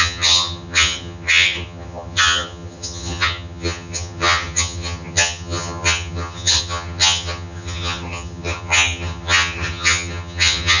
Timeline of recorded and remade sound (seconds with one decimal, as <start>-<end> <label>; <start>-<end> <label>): 0.0-10.8 remade